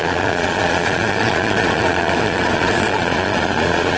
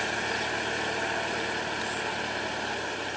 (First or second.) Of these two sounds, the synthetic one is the first